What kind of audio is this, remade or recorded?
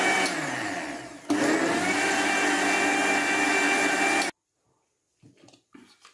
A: recorded